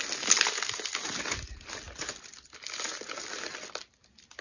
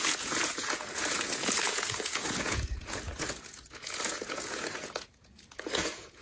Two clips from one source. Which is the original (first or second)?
first